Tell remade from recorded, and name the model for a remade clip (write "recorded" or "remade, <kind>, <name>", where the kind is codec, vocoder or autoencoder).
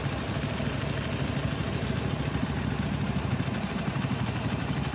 recorded